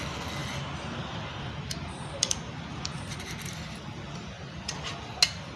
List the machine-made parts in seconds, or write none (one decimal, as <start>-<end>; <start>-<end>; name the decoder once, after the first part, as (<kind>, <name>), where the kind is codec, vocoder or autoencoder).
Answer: 0.4-3.8 (vocoder, BigVGAN v2)